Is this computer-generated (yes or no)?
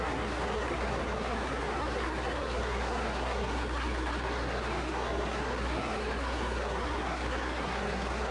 yes